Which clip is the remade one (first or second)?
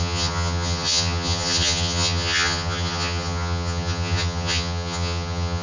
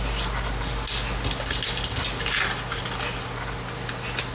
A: first